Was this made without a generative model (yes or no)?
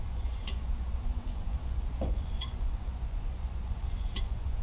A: no